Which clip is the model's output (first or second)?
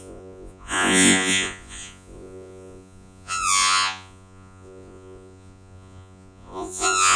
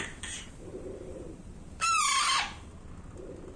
first